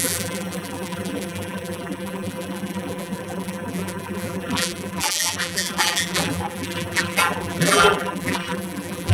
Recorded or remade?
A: remade